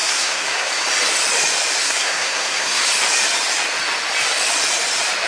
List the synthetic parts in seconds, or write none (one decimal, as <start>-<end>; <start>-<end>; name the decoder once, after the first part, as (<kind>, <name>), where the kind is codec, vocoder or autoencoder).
0.0-0.7 (codec, SNAC); 1.8-2.9